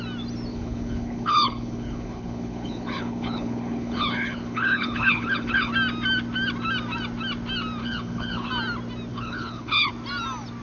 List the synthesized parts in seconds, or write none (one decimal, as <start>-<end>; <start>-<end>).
0.5-5.7; 7.8-8.5; 9.1-9.9